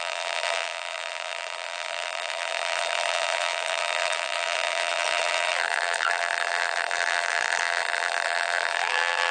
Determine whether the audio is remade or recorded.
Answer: remade